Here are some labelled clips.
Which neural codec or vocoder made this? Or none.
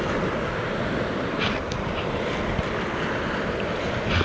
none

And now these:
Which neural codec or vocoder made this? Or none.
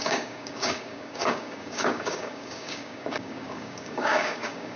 codec, DAC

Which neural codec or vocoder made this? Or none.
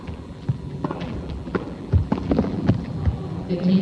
vocoder, BigVGAN v2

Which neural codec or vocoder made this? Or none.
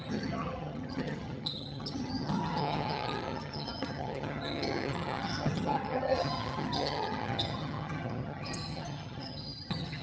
vocoder, HiFi-GAN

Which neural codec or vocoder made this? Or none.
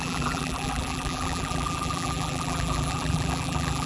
vocoder, BigVGAN v2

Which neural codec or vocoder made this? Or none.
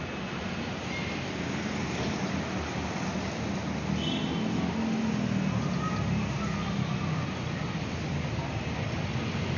none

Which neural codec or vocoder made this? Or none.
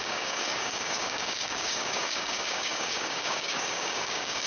codec, DAC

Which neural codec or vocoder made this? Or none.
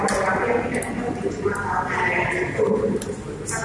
none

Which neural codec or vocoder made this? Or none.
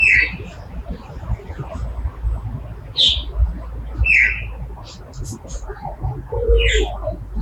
none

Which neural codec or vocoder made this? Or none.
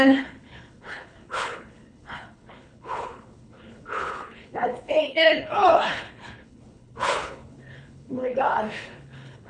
codec, HILCodec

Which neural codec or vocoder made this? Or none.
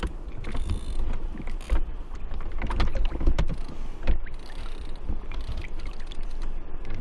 none